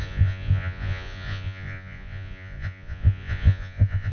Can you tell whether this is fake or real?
fake